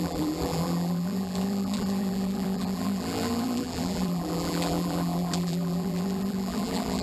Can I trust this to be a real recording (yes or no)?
no